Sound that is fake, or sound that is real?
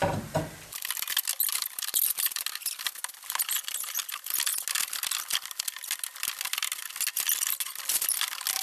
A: real